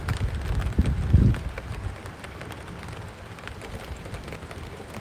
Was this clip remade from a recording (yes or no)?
no